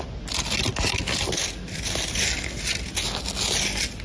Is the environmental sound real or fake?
real